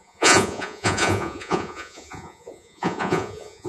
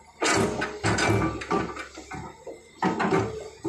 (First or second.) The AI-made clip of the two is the first